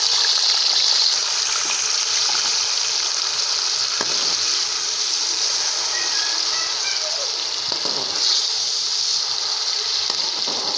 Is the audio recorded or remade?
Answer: recorded